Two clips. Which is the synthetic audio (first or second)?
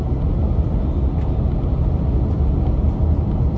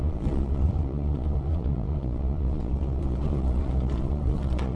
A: second